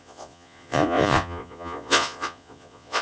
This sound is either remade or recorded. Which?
remade